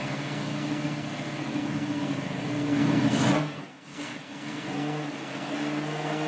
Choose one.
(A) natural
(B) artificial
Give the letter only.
B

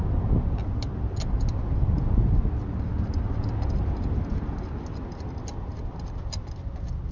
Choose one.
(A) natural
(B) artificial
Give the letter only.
A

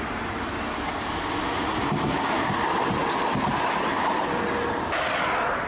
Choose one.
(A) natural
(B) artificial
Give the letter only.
A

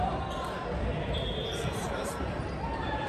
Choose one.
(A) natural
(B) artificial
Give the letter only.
A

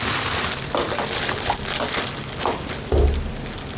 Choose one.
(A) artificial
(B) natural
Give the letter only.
B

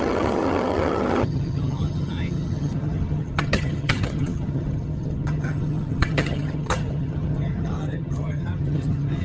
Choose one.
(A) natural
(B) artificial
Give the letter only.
B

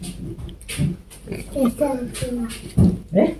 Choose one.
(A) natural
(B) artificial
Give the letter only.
A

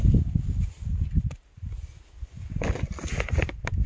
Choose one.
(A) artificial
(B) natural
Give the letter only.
B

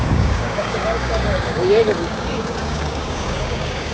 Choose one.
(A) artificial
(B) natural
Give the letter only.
A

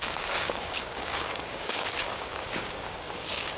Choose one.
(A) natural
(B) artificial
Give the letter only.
B